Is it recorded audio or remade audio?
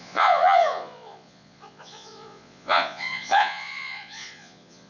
remade